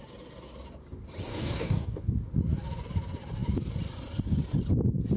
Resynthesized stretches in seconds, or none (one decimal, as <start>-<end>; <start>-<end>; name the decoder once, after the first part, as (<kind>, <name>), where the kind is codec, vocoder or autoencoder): 1.3-2.1 (codec, DAC)